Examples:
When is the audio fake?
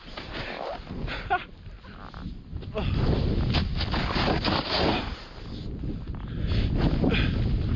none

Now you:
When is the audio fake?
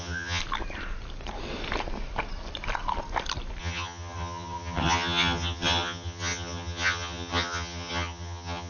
0.0-0.4 (vocoder, HiFi-GAN); 3.6-8.7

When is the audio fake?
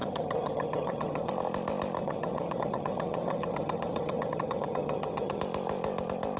0.0-1.3 (vocoder, HiFi-GAN); 2.0-5.4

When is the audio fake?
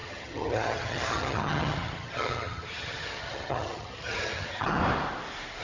0.0-4.8 (vocoder, HiFi-GAN)